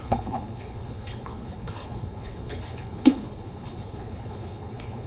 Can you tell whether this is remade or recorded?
remade